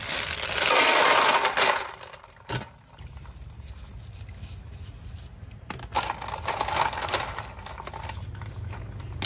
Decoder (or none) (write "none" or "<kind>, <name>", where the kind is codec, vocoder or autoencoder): none